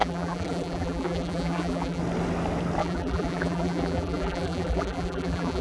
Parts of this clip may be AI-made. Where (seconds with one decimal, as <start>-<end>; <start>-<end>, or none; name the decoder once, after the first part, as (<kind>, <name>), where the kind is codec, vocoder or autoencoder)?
0.0-2.0 (vocoder, BigVGAN v2); 2.8-5.6